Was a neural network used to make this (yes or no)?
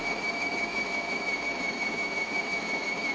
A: yes